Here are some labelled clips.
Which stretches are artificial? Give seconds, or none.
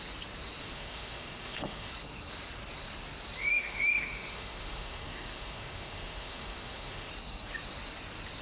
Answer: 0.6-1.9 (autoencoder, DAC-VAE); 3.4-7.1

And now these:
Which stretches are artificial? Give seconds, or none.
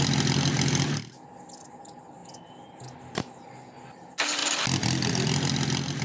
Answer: none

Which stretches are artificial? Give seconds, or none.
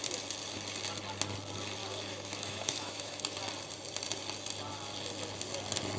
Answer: 1.8-3.2 (autoencoder, DAC-VAE)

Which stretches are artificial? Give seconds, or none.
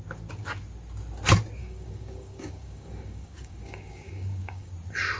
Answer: 1.6-4.7 (codec, DAC)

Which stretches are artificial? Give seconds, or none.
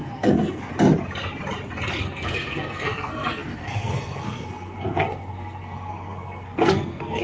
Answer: 0.0-0.7 (codec, SNAC); 2.0-7.2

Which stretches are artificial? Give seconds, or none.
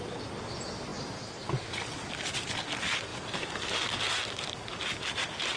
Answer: none